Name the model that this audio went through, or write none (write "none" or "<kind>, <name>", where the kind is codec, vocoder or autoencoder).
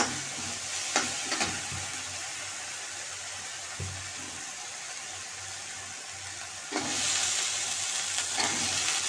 none